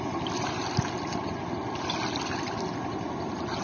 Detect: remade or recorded recorded